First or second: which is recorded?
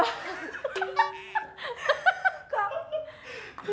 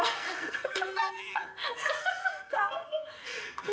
first